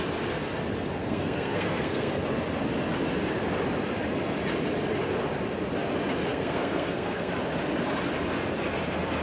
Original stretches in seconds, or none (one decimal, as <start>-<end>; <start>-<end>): 0.0-1.0; 2.2-6.3; 7.3-9.2